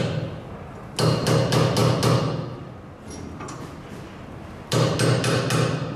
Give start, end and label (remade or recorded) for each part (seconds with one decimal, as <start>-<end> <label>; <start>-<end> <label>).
0.0-6.0 recorded